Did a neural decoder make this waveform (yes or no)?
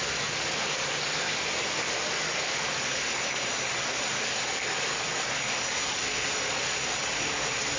no